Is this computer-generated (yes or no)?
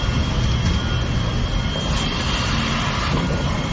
no